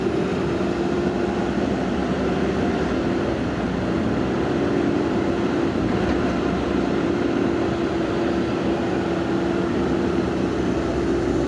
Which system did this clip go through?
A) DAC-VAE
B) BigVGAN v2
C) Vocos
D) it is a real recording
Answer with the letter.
B